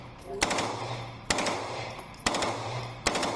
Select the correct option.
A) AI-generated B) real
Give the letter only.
A